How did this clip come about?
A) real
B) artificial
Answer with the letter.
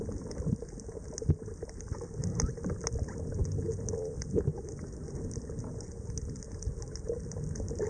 A